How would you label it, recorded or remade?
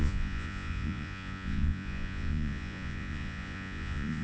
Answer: remade